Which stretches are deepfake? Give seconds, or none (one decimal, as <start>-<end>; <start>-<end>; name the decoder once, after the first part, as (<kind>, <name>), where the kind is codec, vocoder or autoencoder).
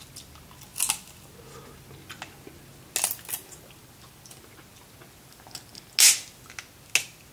none